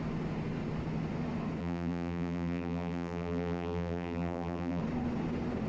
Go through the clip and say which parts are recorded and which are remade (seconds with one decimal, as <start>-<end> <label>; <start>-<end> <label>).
0.0-1.6 recorded; 1.6-4.8 remade; 4.8-5.7 recorded